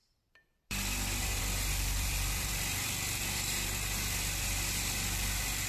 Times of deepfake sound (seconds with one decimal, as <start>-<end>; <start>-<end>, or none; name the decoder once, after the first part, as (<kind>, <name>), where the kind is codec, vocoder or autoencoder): 0.0-5.7 (vocoder, BigVGAN v2)